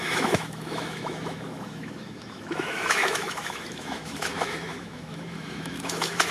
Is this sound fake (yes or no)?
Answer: yes